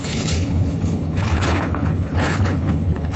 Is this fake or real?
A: fake